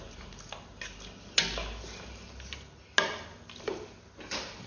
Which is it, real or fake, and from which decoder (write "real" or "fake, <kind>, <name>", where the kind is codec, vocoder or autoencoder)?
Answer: real